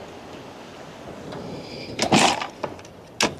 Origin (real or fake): real